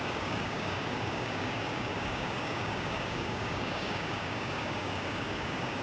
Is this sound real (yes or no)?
no